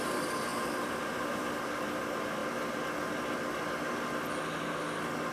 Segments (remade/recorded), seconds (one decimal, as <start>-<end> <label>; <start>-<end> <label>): 0.0-0.5 recorded; 0.5-1.5 remade; 1.5-5.3 recorded